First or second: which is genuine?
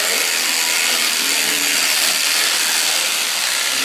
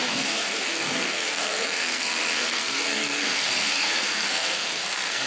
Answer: first